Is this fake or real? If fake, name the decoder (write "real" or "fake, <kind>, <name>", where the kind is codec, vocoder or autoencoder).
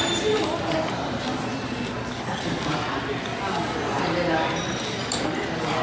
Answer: real